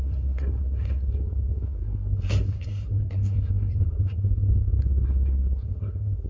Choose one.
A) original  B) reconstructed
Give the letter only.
B